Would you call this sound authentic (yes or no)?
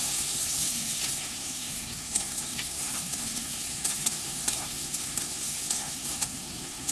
no